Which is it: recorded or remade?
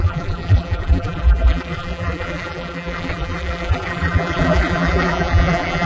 remade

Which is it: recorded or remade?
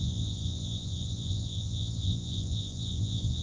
remade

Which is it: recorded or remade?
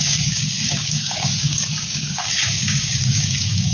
remade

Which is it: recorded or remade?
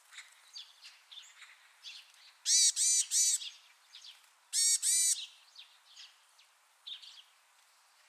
recorded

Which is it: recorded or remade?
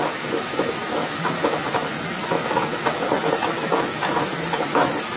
remade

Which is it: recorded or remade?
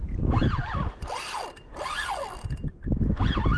recorded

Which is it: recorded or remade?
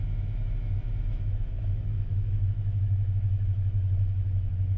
remade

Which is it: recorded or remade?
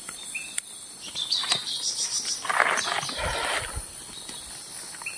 recorded